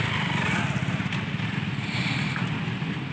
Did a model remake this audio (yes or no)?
no